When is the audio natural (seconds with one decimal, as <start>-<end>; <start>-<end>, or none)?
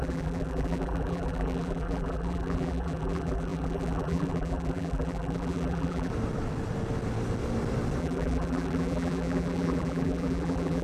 6.1-8.0